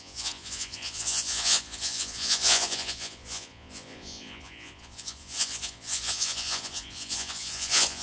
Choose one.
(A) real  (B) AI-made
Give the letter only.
B